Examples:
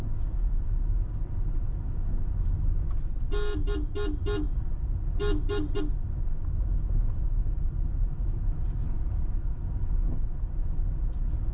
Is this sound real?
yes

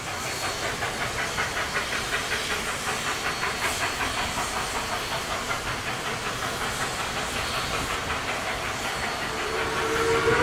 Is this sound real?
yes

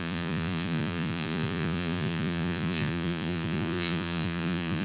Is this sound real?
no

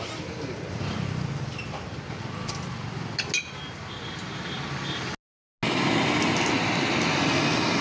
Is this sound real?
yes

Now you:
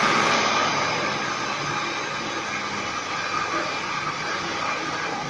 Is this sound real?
yes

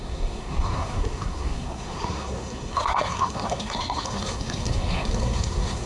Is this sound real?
no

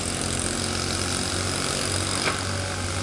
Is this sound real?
yes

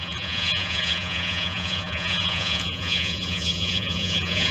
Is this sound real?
no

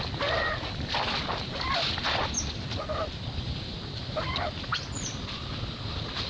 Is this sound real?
yes